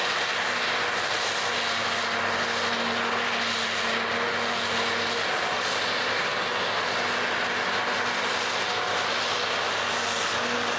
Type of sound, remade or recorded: recorded